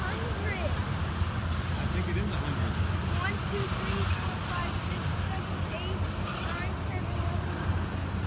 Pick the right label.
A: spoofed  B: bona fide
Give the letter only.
B